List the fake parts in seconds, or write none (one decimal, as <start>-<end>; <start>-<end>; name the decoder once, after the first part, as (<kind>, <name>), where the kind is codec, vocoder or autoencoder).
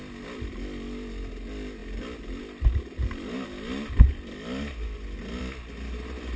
none